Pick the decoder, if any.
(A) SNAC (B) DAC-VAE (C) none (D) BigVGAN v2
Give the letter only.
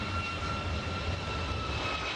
C